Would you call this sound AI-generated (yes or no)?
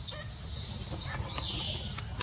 no